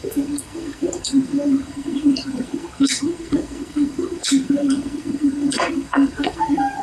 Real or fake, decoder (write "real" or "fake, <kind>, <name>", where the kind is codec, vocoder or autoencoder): fake, codec, SNAC